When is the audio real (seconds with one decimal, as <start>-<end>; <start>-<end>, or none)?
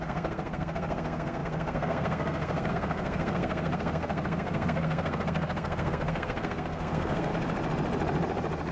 7.3-8.7